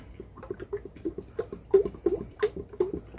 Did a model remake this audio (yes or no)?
no